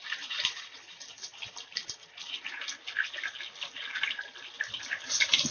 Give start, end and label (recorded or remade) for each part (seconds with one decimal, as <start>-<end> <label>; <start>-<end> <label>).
0.0-1.8 remade; 1.8-4.5 recorded; 4.5-5.5 remade